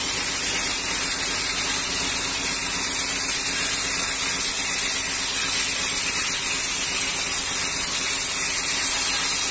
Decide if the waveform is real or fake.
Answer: real